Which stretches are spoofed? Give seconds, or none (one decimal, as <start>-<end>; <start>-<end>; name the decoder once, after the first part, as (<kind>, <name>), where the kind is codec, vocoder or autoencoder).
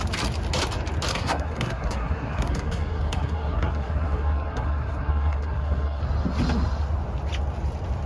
1.1-6.0 (codec, SNAC)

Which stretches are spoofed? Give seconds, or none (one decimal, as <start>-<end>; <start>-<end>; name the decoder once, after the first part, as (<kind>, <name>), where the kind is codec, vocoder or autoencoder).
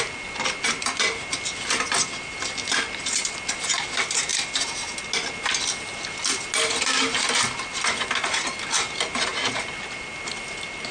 none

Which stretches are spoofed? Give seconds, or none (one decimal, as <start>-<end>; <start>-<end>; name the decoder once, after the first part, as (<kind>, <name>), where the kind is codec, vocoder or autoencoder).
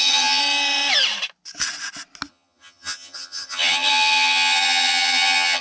0.0-0.4 (vocoder, HiFi-GAN); 2.3-5.6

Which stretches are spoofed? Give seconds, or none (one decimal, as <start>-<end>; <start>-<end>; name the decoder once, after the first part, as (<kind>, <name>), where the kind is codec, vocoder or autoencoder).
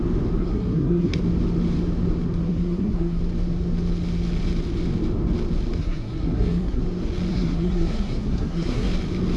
0.4-1.2 (codec, SNAC); 2.4-3.2; 5.8-6.8; 7.3-8.9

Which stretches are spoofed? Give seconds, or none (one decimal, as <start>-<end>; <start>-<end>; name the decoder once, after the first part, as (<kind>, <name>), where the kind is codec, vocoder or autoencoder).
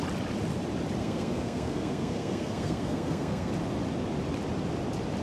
1.0-3.5 (codec, SNAC)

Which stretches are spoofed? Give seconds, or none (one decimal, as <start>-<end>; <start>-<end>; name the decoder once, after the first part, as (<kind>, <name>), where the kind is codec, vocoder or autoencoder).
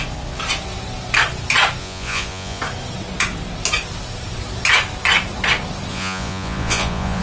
1.8-2.6 (vocoder, Vocos); 5.9-7.2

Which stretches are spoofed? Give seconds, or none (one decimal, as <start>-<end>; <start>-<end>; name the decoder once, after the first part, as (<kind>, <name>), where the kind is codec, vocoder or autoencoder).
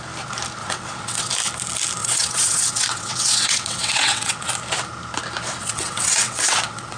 0.6-1.3 (vocoder, WaveNeXt); 2.0-4.5; 5.6-7.0